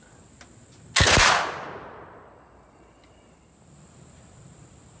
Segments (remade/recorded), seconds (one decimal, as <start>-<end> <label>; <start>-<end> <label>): 0.0-5.0 recorded